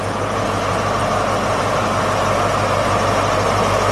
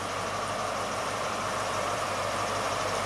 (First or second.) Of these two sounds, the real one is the first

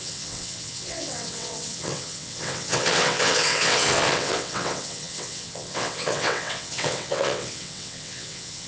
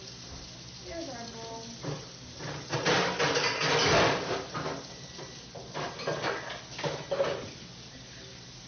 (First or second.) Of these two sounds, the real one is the second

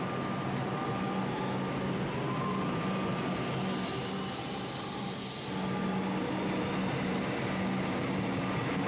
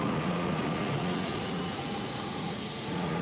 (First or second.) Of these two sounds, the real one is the first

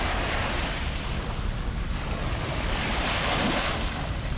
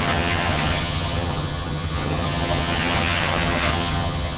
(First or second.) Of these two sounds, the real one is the first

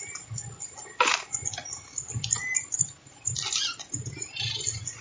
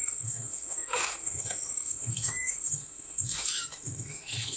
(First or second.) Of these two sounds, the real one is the first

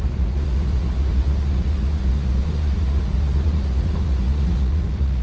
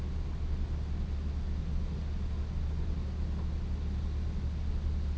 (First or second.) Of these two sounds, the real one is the second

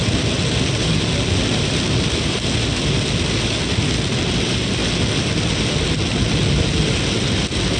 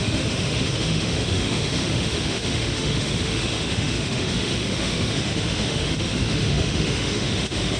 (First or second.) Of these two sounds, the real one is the first